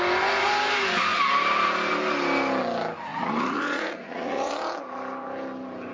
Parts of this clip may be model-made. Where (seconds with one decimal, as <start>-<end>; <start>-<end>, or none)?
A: 3.1-4.5